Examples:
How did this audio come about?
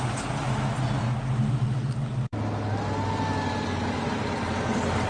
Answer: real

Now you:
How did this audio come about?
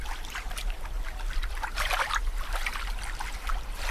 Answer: real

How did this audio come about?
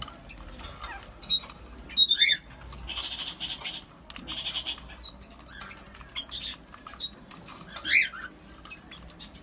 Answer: real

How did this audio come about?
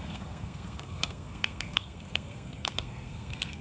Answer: fake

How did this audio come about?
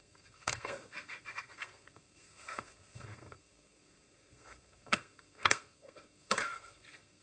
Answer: fake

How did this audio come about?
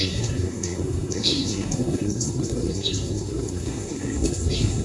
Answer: fake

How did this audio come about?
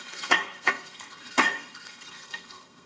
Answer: fake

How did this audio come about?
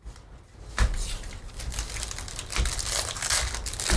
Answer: real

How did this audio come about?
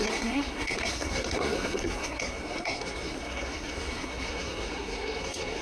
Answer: fake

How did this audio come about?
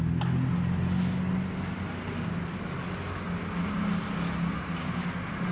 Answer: real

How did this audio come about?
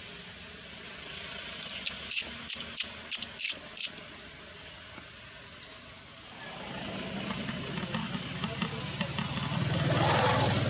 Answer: real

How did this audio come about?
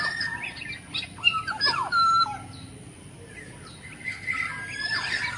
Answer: real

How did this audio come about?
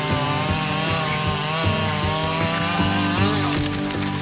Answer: real